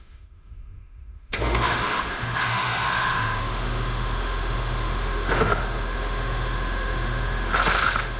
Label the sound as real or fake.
fake